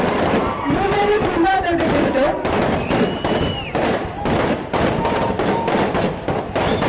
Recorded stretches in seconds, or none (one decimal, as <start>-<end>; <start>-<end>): 0.0-6.9